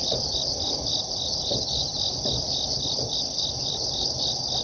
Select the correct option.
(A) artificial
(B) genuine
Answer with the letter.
B